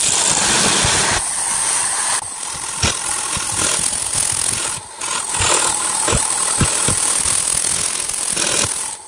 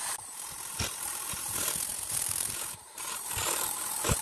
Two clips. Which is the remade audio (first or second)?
second